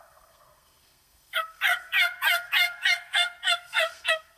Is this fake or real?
fake